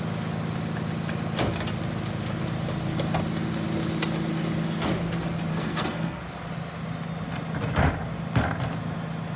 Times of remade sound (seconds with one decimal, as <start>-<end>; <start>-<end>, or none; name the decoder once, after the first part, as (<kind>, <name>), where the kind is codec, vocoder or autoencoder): 5.5-6.2 (codec, SNAC)

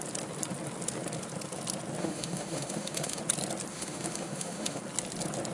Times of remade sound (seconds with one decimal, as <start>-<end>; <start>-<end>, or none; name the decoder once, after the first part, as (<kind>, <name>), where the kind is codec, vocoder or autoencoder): 2.0-3.2 (autoencoder, DAC-VAE); 3.7-4.8

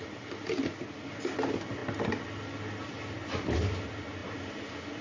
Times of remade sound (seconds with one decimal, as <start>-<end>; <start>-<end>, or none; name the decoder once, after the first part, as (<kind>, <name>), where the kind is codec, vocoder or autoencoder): none

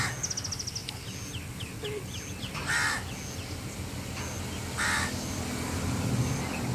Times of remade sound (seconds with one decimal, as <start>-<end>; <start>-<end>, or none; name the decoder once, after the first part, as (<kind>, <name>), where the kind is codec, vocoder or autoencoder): none

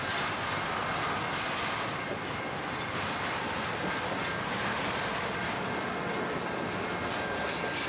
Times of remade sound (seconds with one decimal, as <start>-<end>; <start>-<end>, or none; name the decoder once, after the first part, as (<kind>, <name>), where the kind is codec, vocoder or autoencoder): none

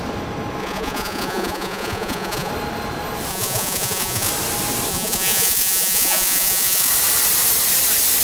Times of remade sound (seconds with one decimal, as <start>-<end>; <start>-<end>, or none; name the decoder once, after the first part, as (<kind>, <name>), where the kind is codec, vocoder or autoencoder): 0.6-2.5 (vocoder, Vocos); 3.3-4.3; 4.9-6.9

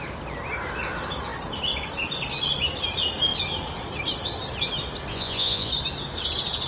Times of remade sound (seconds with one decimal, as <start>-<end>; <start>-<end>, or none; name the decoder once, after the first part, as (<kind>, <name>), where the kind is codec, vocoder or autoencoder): 5.1-5.7 (vocoder, Vocos)